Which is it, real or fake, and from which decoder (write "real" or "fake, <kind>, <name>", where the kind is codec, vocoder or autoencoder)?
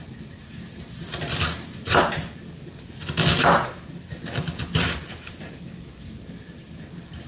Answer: real